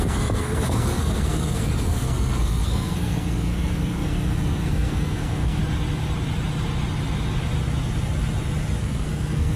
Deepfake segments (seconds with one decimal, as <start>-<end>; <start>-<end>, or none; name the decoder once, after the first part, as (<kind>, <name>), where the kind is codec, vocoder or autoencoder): 0.0-5.6 (codec, SNAC); 8.8-9.6